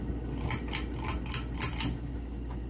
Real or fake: real